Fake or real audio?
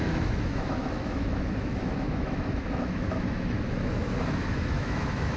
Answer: fake